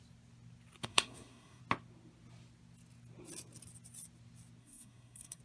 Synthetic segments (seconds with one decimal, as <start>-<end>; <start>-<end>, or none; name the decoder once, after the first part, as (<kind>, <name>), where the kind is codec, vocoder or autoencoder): 0.9-1.6 (codec, SNAC); 4.6-5.4